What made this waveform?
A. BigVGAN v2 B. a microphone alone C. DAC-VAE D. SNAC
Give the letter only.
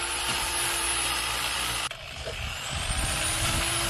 A